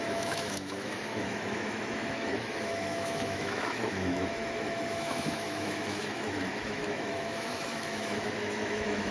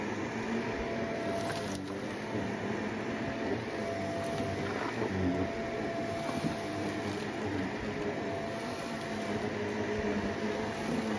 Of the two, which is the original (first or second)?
second